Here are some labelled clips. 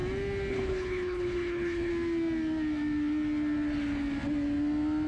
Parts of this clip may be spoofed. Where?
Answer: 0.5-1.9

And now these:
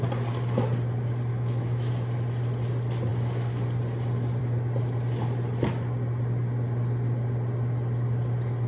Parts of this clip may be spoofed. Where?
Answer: 1.3-1.9

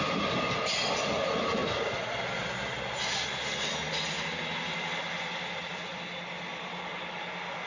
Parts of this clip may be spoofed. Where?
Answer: none

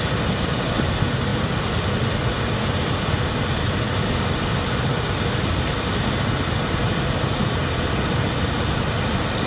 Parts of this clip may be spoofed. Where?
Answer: none

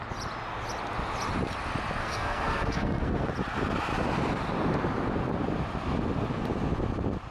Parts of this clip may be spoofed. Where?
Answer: 2.0-3.3

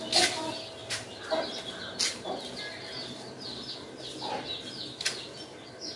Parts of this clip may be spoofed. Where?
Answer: none

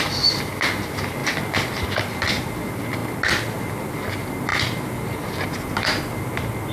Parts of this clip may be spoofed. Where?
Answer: none